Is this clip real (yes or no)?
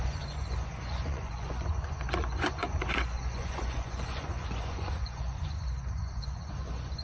no